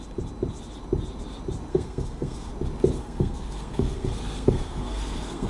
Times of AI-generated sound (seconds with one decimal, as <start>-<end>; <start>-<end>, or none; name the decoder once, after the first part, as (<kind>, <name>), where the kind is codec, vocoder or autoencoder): 1.7-2.5 (codec, SNAC); 3.0-5.5